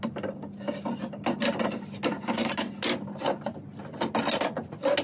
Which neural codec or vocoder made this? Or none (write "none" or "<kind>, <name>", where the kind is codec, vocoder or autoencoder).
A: none